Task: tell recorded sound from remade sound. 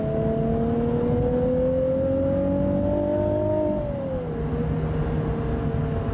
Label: recorded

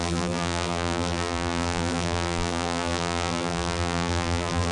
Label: remade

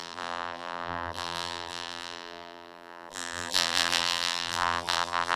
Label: remade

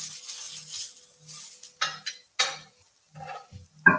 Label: recorded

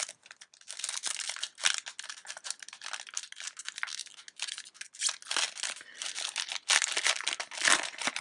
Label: recorded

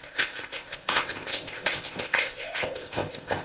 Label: remade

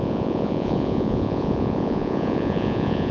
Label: remade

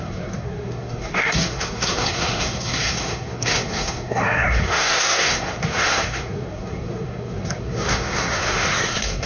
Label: remade